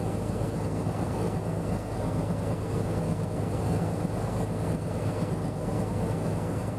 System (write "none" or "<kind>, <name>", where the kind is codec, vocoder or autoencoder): codec, SNAC